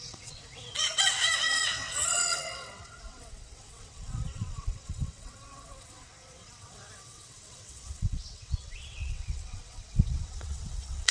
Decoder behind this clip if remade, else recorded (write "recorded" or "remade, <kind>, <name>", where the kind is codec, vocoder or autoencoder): remade, vocoder, WaveNeXt